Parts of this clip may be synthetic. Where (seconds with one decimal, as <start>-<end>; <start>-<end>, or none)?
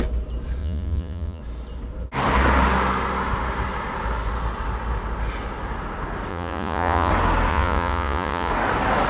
0.6-1.4; 6.3-7.1; 7.5-8.5